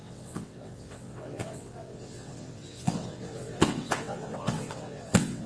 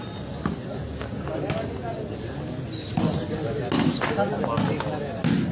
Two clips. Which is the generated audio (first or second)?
first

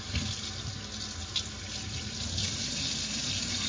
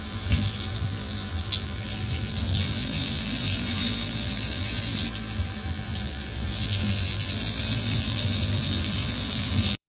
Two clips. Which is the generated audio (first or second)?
second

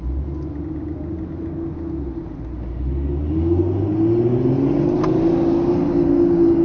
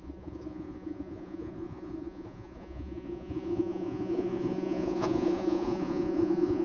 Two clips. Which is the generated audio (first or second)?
second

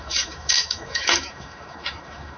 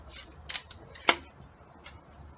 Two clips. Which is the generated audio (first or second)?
first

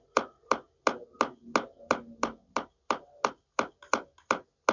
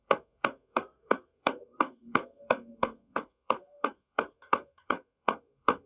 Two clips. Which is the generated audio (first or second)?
second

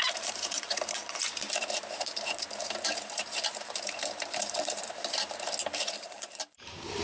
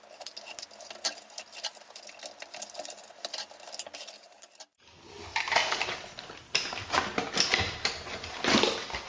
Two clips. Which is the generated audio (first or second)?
first